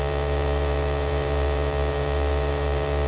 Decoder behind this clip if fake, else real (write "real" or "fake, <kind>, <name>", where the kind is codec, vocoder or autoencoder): fake, vocoder, BigVGAN v2